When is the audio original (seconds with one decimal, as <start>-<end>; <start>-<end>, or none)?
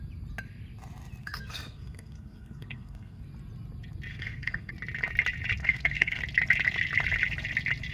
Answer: 0.0-1.2; 3.2-4.1; 4.7-5.6; 6.2-7.9